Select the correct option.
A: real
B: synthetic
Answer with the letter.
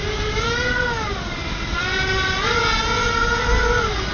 A